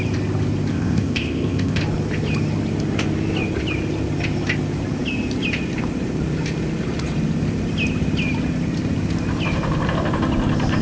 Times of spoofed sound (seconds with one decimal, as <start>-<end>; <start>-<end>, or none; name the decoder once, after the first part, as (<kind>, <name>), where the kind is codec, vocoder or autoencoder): 0.7-1.8 (codec, ZipCodec)